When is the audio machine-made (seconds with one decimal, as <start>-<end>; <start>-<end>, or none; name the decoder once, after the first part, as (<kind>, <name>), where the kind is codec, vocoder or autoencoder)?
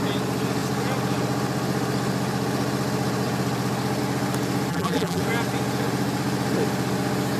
4.7-5.2 (vocoder, BigVGAN v2)